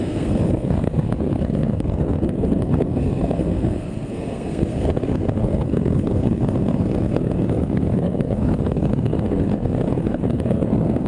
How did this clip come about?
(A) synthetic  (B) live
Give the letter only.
A